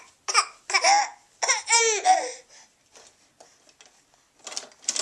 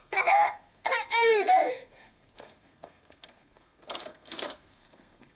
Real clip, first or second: first